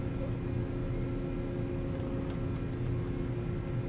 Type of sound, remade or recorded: recorded